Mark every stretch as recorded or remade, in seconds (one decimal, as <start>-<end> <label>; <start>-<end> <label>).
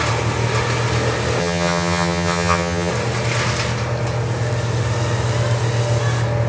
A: 0.0-1.4 recorded; 1.4-2.9 remade; 2.9-6.5 recorded